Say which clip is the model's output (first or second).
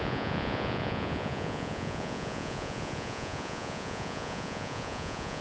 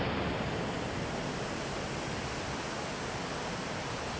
first